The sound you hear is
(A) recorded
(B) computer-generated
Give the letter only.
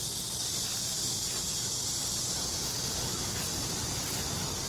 A